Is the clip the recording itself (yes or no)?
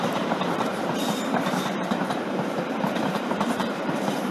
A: no